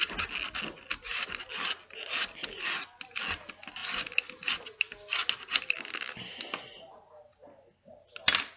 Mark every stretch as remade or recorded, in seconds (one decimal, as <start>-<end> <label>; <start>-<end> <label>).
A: 0.0-8.6 recorded